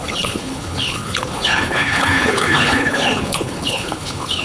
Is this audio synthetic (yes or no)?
yes